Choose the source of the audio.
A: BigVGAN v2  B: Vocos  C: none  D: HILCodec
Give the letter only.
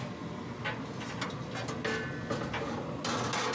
C